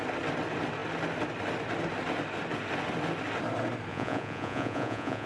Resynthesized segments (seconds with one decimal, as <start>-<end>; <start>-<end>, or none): 3.9-5.3